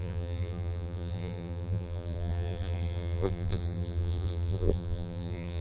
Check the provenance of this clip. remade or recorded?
remade